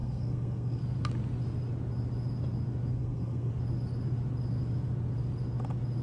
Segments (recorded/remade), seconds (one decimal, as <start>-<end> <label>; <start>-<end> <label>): 0.0-0.8 remade; 0.8-2.9 recorded; 2.9-3.5 remade; 3.5-6.0 recorded